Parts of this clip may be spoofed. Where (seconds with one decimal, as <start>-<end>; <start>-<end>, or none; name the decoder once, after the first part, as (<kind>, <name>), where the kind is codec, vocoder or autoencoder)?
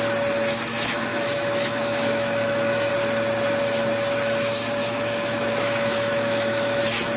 1.1-2.9 (autoencoder, DAC-VAE); 4.8-6.8